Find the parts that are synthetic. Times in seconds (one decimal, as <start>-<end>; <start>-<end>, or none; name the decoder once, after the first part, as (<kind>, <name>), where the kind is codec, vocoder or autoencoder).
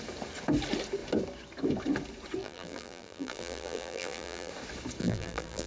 2.4-4.5 (vocoder, BigVGAN v2); 5.0-5.7